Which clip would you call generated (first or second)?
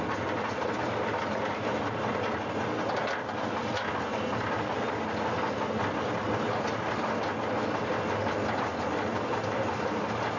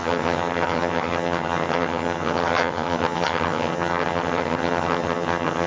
second